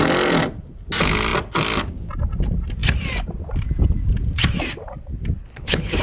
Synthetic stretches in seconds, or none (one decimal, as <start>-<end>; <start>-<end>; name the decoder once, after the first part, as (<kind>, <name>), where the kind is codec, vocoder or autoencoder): 5.4-6.0 (codec, HILCodec)